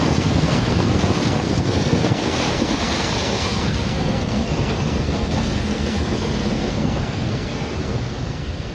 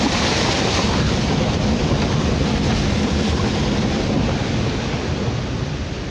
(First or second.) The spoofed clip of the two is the first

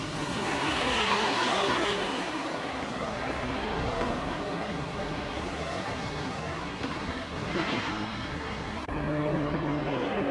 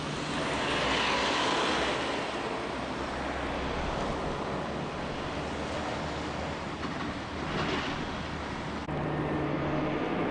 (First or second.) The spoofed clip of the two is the first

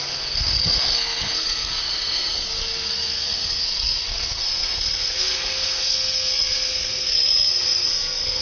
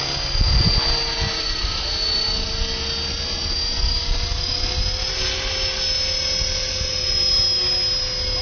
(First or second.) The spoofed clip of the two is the first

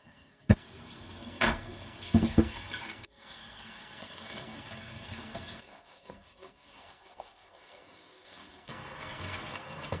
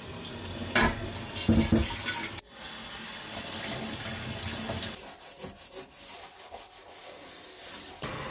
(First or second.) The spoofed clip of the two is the first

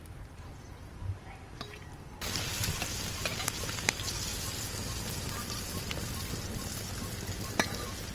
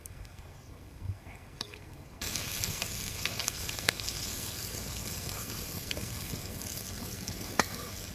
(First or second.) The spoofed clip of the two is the second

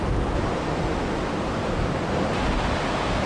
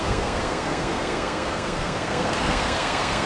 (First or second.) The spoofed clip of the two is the second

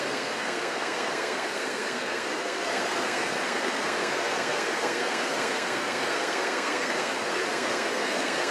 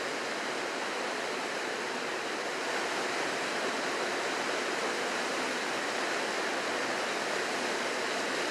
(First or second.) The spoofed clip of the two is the first